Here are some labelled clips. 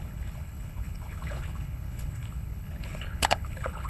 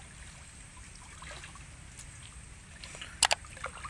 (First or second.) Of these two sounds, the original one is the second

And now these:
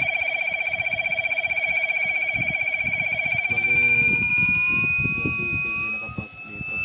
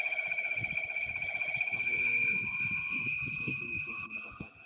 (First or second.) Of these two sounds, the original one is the first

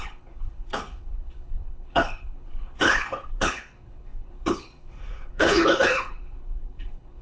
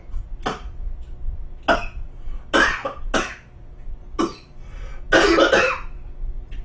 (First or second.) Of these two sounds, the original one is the second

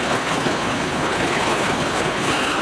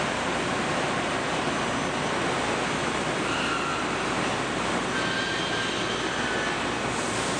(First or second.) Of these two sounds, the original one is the second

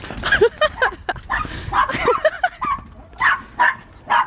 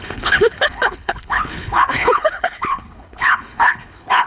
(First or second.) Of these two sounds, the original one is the first